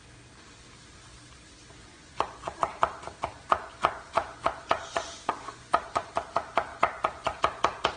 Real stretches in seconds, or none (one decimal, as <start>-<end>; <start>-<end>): 0.0-1.9; 2.6-3.3; 6.1-6.7; 7.4-8.0